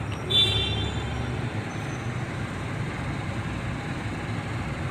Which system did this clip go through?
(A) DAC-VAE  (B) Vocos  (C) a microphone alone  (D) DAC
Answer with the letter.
C